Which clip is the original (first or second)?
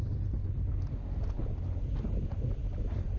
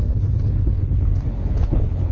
first